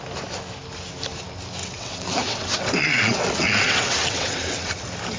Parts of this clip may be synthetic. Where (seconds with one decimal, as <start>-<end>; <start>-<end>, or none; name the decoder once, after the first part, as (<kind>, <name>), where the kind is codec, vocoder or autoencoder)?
1.6-4.7 (vocoder, WaveNeXt)